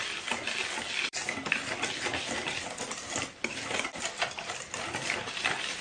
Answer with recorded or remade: recorded